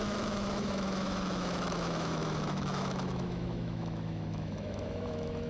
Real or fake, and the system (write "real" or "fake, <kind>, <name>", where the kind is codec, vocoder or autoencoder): fake, autoencoder, DAC-VAE